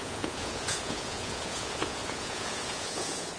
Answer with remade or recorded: remade